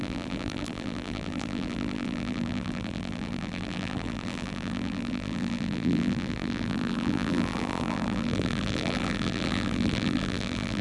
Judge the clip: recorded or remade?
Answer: remade